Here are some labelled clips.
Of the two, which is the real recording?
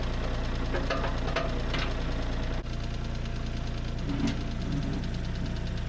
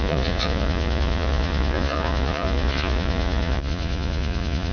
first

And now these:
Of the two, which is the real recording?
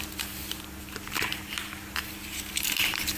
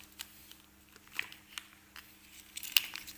second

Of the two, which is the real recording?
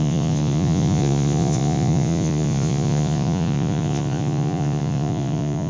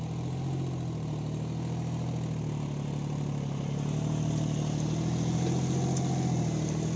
second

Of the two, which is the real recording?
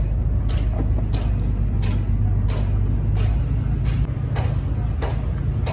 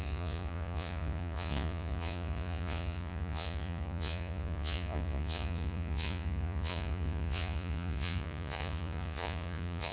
first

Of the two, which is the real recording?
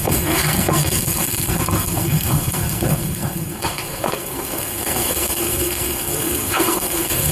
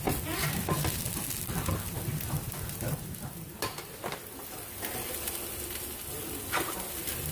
second